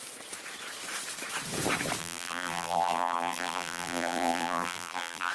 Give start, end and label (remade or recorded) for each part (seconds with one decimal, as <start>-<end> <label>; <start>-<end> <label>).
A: 0.0-2.0 recorded; 2.0-5.3 remade